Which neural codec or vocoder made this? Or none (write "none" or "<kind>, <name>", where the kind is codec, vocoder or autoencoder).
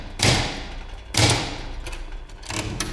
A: none